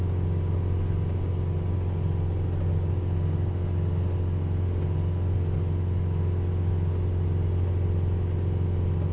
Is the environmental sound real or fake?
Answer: real